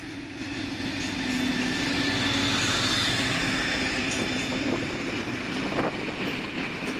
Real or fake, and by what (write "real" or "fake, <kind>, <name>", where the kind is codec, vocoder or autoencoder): real